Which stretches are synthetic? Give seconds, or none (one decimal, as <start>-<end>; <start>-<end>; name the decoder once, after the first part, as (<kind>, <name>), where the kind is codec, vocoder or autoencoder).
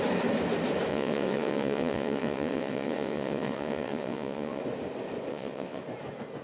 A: 0.9-4.6 (vocoder, WaveNeXt); 5.3-5.8